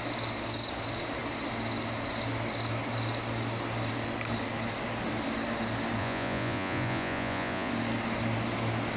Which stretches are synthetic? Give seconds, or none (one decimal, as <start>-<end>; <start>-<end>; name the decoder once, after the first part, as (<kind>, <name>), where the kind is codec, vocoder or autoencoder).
6.0-7.7 (vocoder, Vocos)